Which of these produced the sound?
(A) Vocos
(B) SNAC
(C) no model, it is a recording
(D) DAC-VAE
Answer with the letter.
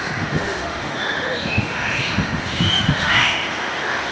D